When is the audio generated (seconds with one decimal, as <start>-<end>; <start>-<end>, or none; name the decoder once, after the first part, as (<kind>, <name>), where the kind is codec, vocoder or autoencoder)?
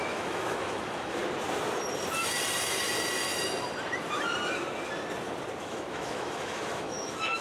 0.0-1.2 (autoencoder, DAC-VAE); 5.6-7.4